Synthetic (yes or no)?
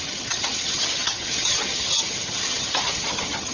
yes